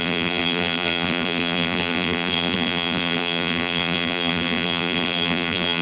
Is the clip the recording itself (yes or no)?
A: no